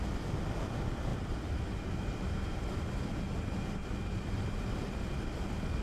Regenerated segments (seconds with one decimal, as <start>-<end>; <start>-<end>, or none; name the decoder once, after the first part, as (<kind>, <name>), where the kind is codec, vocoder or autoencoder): 1.1-4.6 (vocoder, BigVGAN v2)